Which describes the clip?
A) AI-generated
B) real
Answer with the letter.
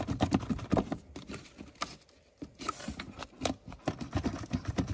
B